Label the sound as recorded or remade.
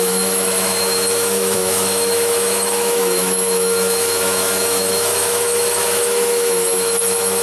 remade